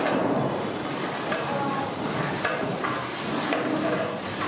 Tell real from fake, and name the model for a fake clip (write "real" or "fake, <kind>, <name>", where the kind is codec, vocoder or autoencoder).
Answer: real